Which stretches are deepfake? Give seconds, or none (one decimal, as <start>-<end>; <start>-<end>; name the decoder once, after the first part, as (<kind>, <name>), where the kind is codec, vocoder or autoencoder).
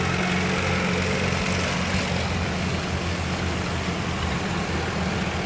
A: none